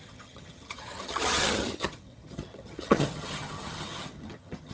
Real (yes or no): no